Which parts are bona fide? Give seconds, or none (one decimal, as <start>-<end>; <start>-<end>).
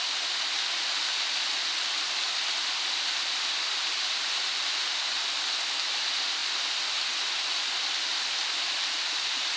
0.0-9.6